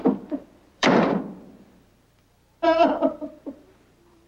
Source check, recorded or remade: remade